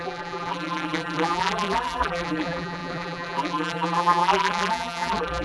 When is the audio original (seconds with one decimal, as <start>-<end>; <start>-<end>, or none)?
none